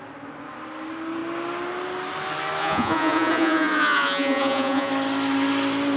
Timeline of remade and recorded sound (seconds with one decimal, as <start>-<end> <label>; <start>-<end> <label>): 0.0-2.6 recorded; 2.6-4.9 remade; 4.9-6.0 recorded